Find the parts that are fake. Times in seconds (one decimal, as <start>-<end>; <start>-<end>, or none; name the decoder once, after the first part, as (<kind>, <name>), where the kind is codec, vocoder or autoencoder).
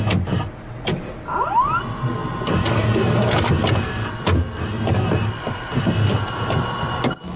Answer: none